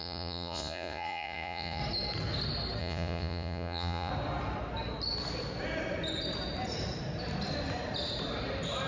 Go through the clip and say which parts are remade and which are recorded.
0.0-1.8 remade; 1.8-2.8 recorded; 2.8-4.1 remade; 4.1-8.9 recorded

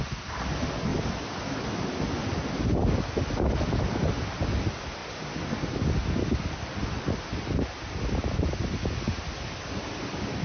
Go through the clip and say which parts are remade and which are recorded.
0.0-10.4 recorded